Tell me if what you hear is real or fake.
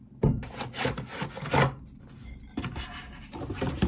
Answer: real